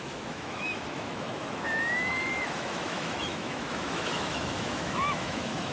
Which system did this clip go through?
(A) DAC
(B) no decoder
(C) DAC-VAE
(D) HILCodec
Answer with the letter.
C